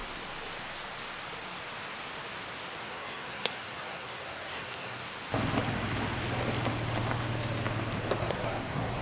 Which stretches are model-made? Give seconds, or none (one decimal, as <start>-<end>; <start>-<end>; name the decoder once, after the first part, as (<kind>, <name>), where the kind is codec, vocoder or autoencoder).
2.8-5.0 (codec, SNAC); 8.2-9.0